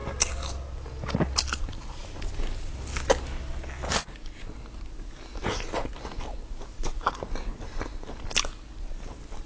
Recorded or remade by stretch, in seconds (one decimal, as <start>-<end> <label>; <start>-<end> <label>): 0.0-9.5 recorded